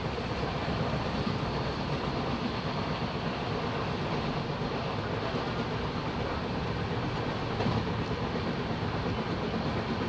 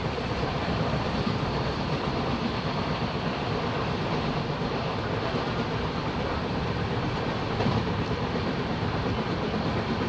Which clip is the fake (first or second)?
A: second